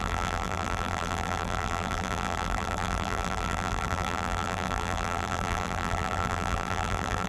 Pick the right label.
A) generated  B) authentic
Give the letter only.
A